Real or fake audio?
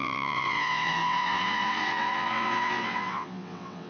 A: fake